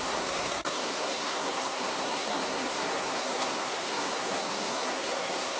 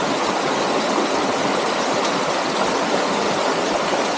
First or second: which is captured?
second